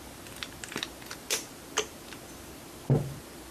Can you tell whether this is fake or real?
fake